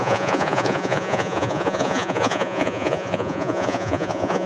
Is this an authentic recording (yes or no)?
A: no